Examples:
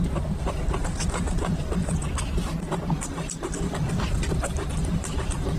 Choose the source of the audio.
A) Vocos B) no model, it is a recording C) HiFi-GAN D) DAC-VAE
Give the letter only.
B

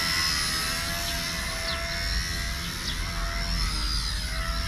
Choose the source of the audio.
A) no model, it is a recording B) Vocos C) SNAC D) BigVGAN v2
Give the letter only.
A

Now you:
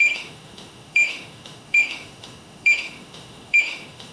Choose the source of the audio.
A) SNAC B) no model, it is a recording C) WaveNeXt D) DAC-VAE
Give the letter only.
D